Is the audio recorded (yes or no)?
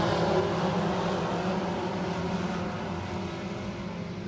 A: yes